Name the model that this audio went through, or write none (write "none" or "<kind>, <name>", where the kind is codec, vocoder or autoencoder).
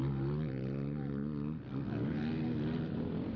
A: none